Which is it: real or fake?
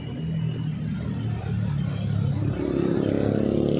real